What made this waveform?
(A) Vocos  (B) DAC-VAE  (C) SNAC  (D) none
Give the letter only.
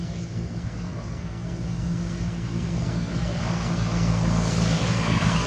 C